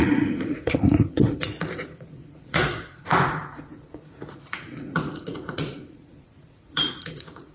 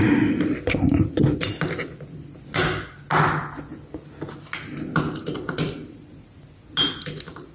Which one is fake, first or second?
first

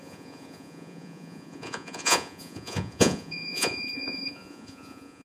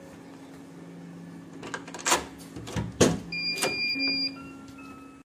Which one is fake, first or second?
first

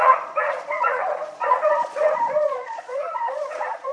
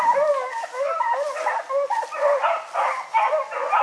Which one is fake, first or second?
first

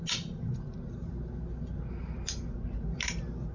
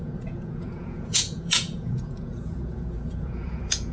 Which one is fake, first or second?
second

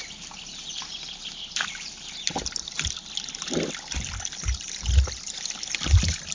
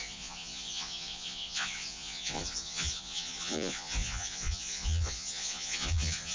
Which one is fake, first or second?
second